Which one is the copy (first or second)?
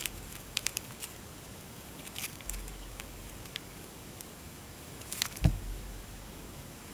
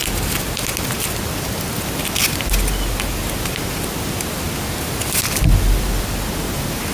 first